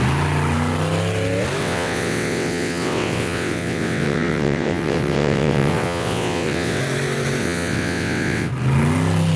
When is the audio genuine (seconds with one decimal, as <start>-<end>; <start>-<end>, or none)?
0.0-1.6; 6.8-7.4; 8.5-9.4